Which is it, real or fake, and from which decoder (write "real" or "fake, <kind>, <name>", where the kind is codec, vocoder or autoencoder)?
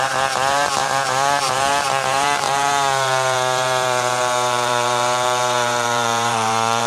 fake, vocoder, BigVGAN v2